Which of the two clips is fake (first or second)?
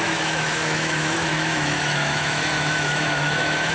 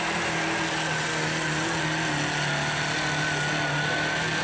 first